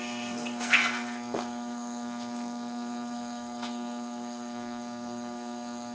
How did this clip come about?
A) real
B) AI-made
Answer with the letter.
B